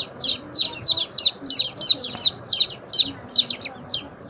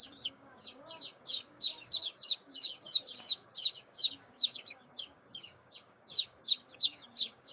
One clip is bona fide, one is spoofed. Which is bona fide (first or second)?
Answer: first